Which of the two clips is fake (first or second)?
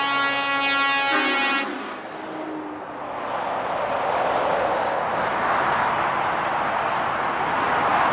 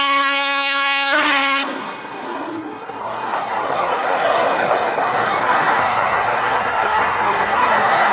second